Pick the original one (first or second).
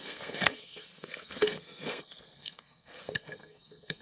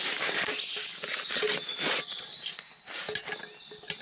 second